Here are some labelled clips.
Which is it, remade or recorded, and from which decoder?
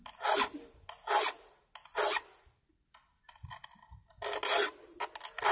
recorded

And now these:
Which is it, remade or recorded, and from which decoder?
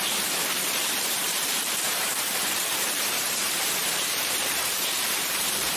remade, vocoder, BigVGAN v2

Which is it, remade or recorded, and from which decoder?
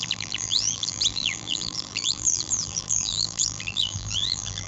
remade, vocoder, BigVGAN v2